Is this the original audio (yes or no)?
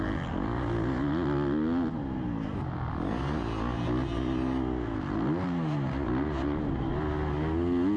yes